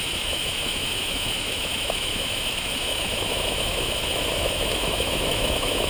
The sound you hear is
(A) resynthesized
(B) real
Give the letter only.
A